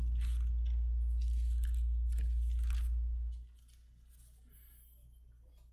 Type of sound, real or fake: real